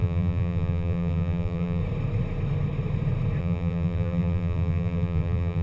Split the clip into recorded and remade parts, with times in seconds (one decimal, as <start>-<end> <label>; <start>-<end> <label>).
0.0-1.8 remade; 1.8-3.4 recorded; 3.4-5.6 remade